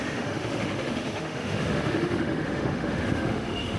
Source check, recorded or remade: remade